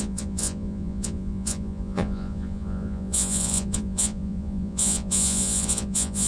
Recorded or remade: remade